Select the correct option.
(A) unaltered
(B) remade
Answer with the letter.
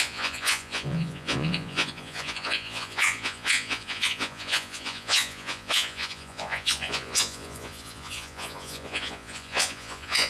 B